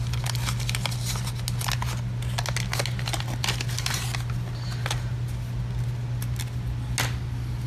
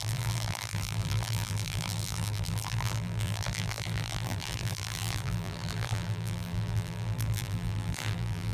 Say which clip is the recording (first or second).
first